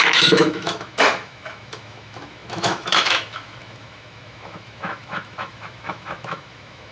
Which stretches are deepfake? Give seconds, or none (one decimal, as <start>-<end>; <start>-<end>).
0.0-6.9